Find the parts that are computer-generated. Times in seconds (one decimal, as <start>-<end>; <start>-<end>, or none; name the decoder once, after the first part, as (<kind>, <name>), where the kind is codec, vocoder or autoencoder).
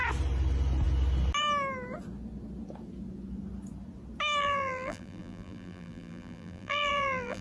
4.4-7.4 (vocoder, BigVGAN v2)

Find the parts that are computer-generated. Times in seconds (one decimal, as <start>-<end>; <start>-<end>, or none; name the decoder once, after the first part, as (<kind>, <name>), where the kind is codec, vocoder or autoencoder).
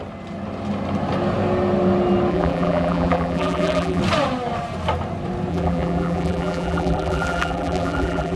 2.3-4.0 (vocoder, BigVGAN v2); 5.5-8.4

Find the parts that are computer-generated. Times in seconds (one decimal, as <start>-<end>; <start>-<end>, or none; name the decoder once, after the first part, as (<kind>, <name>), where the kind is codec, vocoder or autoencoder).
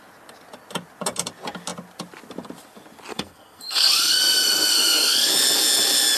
3.1-5.3 (codec, SNAC)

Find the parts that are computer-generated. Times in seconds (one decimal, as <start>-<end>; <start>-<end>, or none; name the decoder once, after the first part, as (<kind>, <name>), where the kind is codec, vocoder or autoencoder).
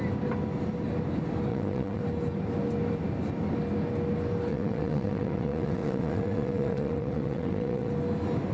1.5-2.0 (vocoder, WaveNeXt); 4.5-7.9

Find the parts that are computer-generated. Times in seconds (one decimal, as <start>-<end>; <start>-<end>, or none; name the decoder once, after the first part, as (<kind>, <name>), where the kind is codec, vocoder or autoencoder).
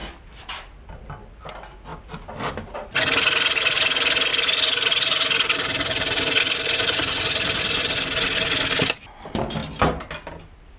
1.9-3.0 (vocoder, BigVGAN v2); 4.3-7.9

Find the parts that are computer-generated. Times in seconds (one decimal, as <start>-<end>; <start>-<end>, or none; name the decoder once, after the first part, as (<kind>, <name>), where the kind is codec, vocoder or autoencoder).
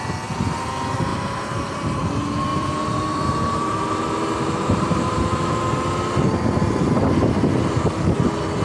1.1-2.1 (vocoder, BigVGAN v2); 2.5-5.2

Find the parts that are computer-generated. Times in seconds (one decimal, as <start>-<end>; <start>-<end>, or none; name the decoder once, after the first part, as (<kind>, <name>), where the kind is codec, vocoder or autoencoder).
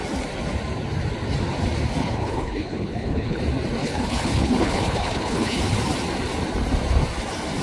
2.0-3.4 (codec, HILCodec); 3.8-5.6